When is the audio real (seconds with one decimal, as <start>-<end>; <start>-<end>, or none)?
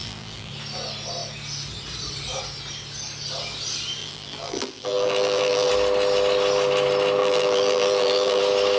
0.5-4.0; 5.7-7.2; 8.4-8.8